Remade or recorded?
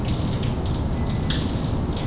recorded